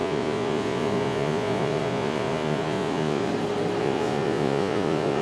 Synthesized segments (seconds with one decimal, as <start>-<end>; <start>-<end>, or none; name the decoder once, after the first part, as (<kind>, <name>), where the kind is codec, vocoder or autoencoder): 0.0-3.3 (vocoder, Vocos); 3.8-5.2